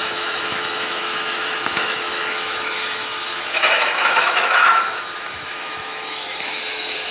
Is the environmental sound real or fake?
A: fake